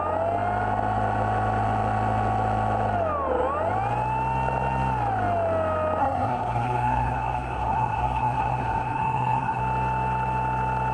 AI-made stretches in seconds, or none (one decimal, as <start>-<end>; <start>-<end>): 6.0-9.6